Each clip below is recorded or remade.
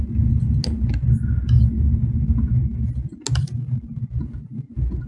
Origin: recorded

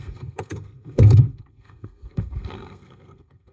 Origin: remade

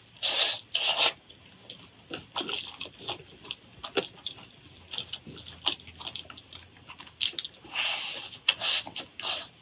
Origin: recorded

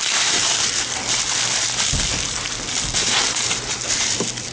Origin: recorded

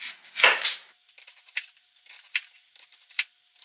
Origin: recorded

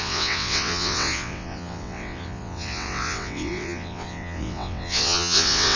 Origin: remade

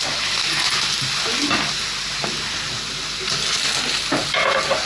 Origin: recorded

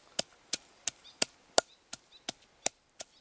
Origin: recorded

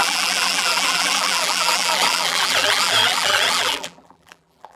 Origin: remade